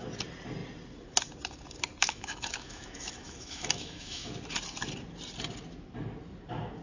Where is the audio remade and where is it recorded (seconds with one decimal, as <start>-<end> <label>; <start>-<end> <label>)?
0.0-2.0 recorded; 2.0-4.3 remade; 4.3-6.8 recorded